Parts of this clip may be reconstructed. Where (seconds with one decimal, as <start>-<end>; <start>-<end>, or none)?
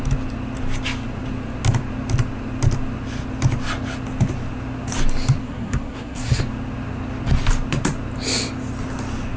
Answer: 5.4-6.4